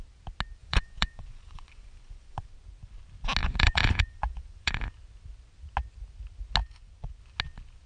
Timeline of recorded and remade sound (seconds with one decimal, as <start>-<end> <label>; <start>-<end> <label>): 0.0-0.6 recorded; 0.6-2.5 remade; 2.5-3.4 recorded; 3.4-4.9 remade; 4.9-6.6 recorded; 6.6-7.2 remade; 7.2-7.9 recorded